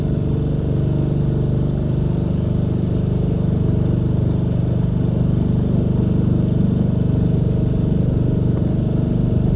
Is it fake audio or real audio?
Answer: real